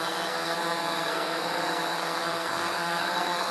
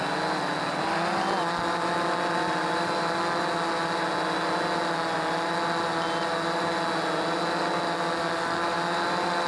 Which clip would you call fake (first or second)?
first